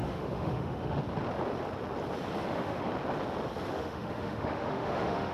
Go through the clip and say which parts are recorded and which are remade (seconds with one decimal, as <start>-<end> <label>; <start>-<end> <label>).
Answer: 0.0-1.0 remade; 1.0-2.5 recorded; 2.5-2.9 remade; 2.9-3.7 recorded; 3.7-5.3 remade